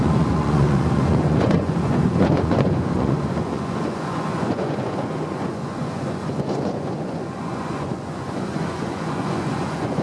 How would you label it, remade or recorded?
remade